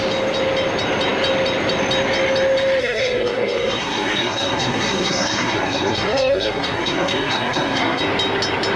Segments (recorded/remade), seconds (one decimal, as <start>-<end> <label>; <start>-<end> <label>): 0.0-2.8 recorded; 2.8-8.0 remade; 8.0-8.8 recorded